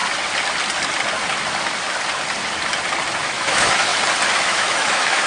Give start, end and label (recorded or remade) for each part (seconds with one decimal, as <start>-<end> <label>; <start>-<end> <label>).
0.0-3.2 recorded; 3.2-3.9 remade; 3.9-4.4 recorded; 4.4-5.3 remade